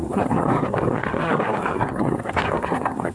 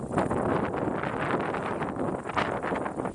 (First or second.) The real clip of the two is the second